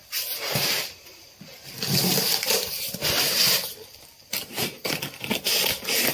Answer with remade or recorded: recorded